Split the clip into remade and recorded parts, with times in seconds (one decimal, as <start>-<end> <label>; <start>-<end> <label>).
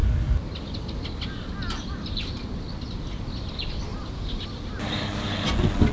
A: 0.0-5.9 recorded